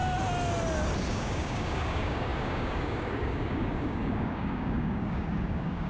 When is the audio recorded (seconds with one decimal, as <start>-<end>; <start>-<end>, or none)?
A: 0.0-1.1